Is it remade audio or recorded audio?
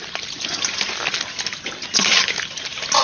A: recorded